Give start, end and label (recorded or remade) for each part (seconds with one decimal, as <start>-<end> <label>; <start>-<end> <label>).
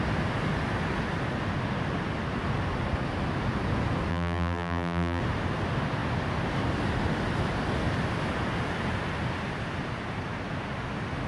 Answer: 0.0-4.1 recorded; 4.1-5.2 remade; 5.2-11.3 recorded